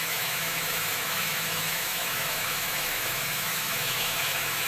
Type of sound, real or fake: fake